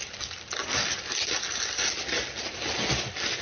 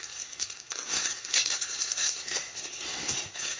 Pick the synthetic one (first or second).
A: second